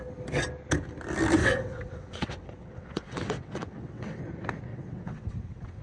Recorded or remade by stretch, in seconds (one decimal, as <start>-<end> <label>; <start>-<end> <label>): 0.0-1.4 recorded; 1.4-4.2 remade; 4.2-4.7 recorded; 4.7-5.8 remade